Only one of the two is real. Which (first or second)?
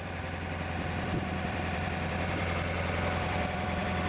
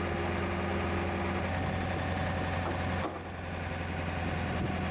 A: second